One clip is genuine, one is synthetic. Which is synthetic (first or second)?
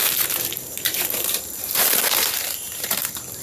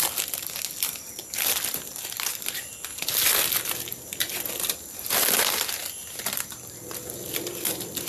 first